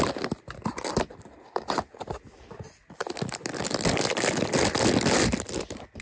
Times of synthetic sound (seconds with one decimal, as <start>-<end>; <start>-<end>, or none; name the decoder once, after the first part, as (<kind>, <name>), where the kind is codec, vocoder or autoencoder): none